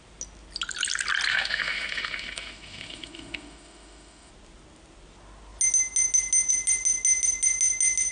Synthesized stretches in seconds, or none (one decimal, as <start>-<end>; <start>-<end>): 1.3-4.3

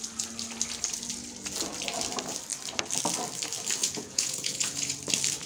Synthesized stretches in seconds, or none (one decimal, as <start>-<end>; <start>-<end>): 3.8-5.0